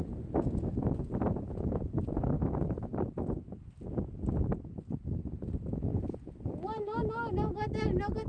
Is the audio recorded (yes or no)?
yes